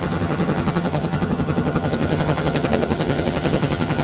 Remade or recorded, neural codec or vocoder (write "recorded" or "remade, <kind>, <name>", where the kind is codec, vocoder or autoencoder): remade, vocoder, HiFi-GAN